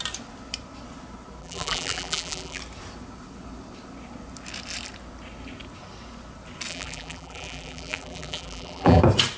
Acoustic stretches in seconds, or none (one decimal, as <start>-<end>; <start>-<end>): 0.0-1.4; 2.6-6.7; 9.0-9.4